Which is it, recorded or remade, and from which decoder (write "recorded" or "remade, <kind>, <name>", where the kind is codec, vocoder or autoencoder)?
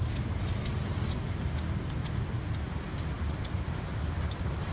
recorded